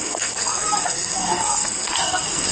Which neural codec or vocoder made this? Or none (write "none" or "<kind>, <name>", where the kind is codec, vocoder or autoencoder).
codec, SNAC